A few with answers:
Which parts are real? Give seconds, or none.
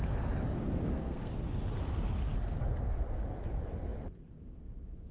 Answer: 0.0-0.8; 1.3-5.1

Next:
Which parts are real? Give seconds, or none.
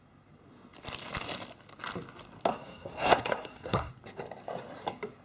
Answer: 0.0-2.5; 3.9-5.2